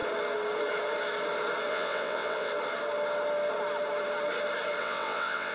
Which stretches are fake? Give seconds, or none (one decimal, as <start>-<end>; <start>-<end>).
1.7-2.5; 4.8-5.5